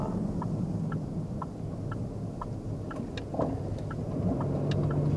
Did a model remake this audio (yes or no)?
no